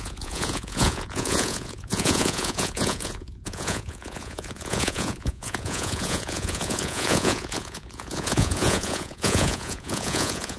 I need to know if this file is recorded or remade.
remade